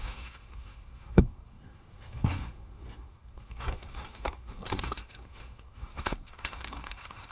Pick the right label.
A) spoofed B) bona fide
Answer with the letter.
A